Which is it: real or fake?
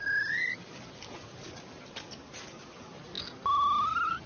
real